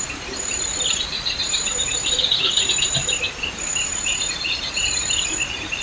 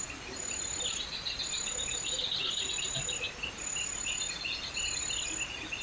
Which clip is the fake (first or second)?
first